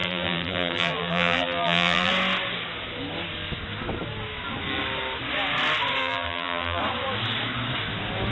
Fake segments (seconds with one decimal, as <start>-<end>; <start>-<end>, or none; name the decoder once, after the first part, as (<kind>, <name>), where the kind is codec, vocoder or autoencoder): 0.0-2.1 (vocoder, BigVGAN v2); 6.0-6.8